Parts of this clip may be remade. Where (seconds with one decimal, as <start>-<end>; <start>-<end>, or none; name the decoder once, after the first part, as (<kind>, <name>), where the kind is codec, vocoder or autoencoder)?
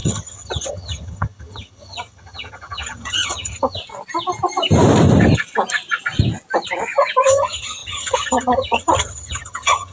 0.0-3.8 (vocoder, HiFi-GAN); 7.3-9.9